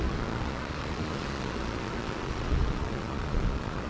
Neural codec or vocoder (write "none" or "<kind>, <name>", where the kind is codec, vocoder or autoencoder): vocoder, Vocos